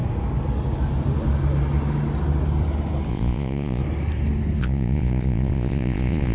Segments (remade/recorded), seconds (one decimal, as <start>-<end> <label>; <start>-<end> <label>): 0.0-3.1 recorded; 3.1-3.8 remade; 3.8-4.6 recorded; 4.6-6.3 remade

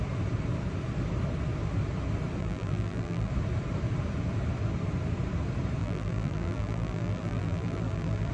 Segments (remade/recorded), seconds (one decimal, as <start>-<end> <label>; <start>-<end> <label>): 0.0-2.4 recorded; 2.4-3.3 remade; 3.3-5.8 recorded; 5.8-8.3 remade

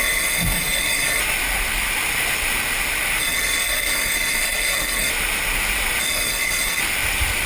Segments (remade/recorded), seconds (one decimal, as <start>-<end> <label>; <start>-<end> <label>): 0.0-1.2 remade; 1.2-3.2 recorded; 3.2-5.1 remade; 5.1-6.0 recorded; 6.0-6.8 remade; 6.8-7.5 recorded

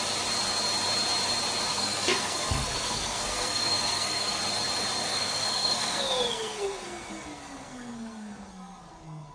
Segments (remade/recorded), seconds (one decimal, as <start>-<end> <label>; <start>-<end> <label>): 0.0-1.7 recorded; 1.7-4.4 remade; 4.4-5.0 recorded; 5.0-9.3 remade